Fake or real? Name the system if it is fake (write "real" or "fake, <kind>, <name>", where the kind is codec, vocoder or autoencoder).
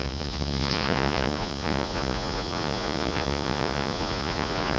fake, vocoder, Vocos